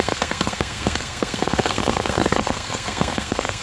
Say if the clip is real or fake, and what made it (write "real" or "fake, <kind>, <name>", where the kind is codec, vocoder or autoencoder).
fake, codec, SNAC